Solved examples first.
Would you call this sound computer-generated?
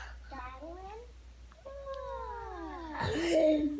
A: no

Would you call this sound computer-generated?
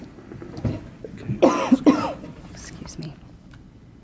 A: no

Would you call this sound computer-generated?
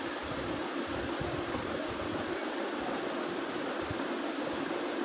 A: no